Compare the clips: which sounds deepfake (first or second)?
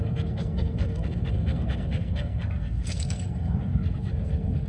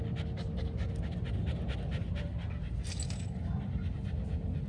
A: first